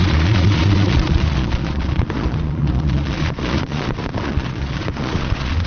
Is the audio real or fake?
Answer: fake